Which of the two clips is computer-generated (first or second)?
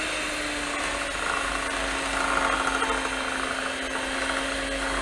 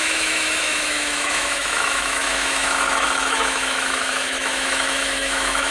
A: second